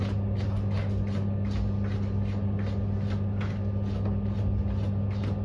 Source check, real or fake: real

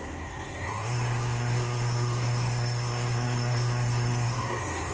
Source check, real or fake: fake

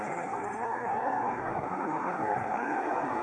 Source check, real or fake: fake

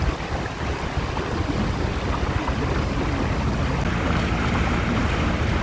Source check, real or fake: real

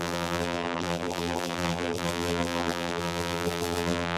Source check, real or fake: fake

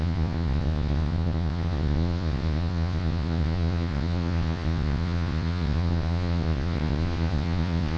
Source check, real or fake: fake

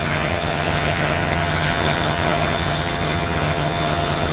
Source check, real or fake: fake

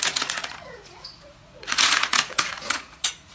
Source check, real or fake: fake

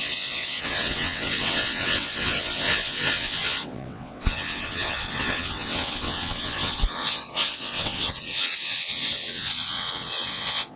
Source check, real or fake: fake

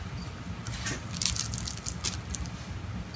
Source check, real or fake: real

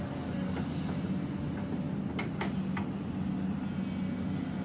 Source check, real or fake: real